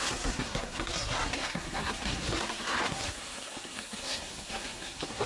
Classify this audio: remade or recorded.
remade